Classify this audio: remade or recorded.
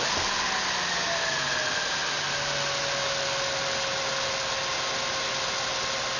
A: recorded